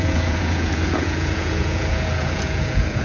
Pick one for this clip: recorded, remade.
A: remade